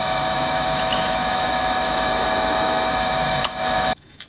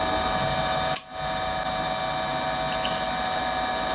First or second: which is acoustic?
second